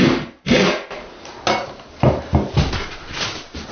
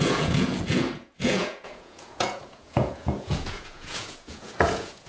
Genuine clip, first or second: first